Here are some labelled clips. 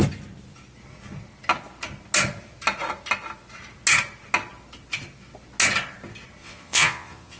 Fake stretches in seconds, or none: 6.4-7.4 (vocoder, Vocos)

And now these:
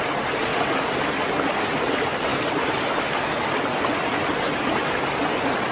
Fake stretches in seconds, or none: none